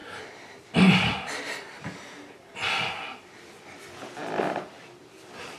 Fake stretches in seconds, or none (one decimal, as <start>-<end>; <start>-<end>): none